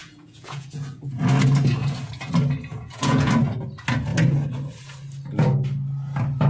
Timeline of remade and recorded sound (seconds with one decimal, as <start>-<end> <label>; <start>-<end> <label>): 0.0-1.2 remade; 1.2-2.7 recorded; 2.7-3.3 remade; 3.3-6.5 recorded